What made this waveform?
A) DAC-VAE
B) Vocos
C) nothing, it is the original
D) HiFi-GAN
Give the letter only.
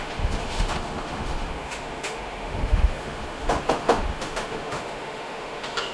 A